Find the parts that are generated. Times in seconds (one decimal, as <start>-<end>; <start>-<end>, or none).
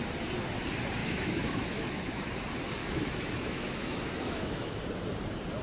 1.0-2.3; 2.8-4.9